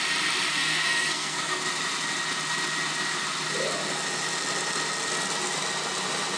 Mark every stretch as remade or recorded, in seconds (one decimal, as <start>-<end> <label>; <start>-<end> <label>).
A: 0.0-0.5 recorded; 0.5-1.6 remade; 1.6-6.4 recorded